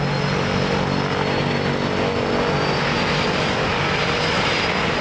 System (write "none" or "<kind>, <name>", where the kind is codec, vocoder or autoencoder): none